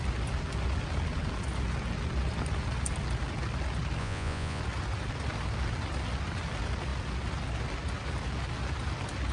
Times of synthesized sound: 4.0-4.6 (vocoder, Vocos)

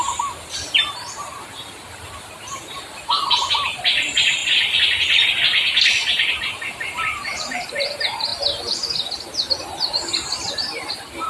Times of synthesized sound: 0.0-4.4 (vocoder, BigVGAN v2); 6.7-8.3; 10.9-11.3

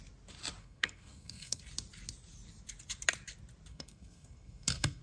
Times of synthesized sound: 0.6-1.6 (codec, SNAC); 3.7-5.0

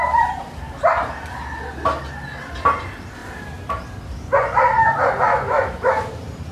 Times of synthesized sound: 5.3-6.1 (autoencoder, DAC-VAE)

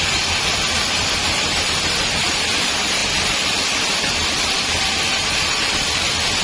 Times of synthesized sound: 0.0-6.4 (vocoder, BigVGAN v2)